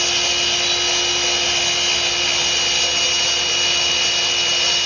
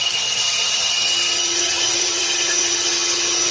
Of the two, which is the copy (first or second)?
second